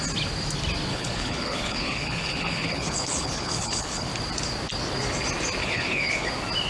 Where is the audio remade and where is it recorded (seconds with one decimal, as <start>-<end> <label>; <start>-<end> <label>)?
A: 0.0-0.9 recorded; 0.9-4.1 remade; 4.1-5.6 recorded; 5.6-6.3 remade; 6.3-6.7 recorded